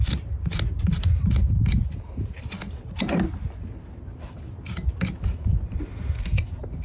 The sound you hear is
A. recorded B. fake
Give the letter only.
A